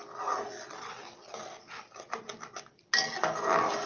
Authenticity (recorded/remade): recorded